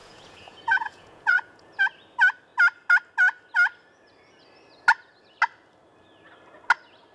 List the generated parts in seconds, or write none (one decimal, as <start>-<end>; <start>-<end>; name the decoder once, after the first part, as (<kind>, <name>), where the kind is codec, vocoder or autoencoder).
0.0-1.8 (vocoder, Vocos)